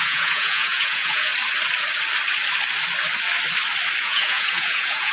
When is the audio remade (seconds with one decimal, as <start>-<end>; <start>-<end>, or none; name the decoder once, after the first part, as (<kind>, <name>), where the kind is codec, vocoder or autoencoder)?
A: 0.0-1.3 (vocoder, Vocos); 4.0-5.1